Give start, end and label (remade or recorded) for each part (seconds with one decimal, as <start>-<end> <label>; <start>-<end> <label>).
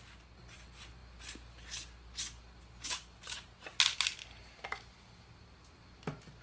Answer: 0.0-6.4 recorded